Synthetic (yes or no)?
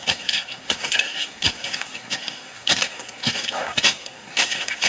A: yes